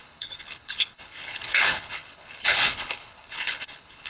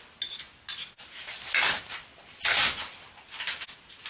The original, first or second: second